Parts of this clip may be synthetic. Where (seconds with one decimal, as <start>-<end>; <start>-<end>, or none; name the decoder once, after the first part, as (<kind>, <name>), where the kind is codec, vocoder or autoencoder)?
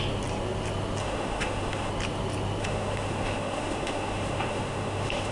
1.0-1.9 (autoencoder, DAC-VAE); 2.6-5.3